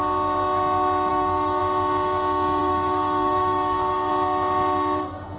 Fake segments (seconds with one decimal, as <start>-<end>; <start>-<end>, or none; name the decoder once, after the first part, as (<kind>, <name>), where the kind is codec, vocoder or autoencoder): 1.1-1.6 (codec, DAC); 2.6-4.1